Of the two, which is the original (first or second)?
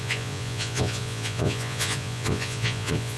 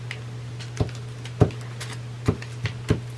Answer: second